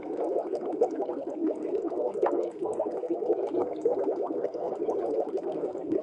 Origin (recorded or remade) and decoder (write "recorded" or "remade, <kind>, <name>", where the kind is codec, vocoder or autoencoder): remade, codec, SNAC